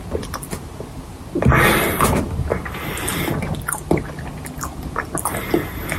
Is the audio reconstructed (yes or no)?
no